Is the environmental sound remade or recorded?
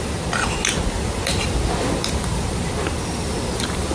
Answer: recorded